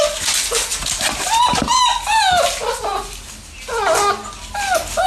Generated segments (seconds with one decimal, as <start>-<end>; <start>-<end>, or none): none